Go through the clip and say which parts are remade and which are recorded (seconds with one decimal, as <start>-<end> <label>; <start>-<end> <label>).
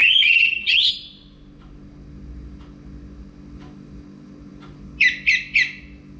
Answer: 0.0-0.9 remade; 0.9-6.2 recorded